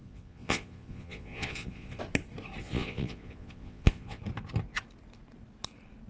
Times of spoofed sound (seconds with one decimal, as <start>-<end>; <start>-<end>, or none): 0.0-2.0; 2.6-4.2